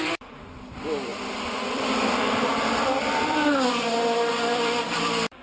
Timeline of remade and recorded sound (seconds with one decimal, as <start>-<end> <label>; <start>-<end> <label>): 0.0-5.4 remade